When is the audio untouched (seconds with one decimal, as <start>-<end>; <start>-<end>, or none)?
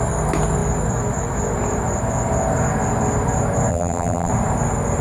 0.0-3.7; 4.3-5.0